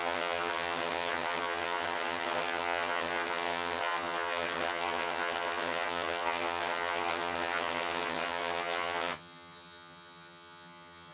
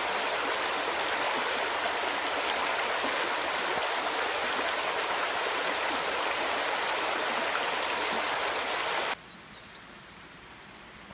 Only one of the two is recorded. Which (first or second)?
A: second